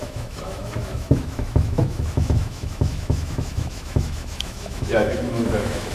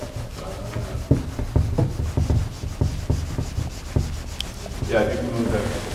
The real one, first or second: second